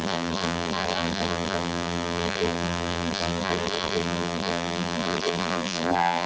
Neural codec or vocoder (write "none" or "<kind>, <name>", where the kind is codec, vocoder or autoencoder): vocoder, BigVGAN v2